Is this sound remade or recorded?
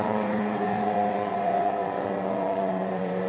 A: remade